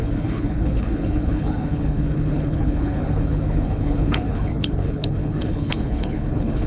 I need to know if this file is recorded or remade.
remade